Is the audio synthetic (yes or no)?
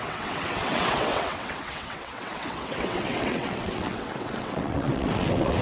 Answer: yes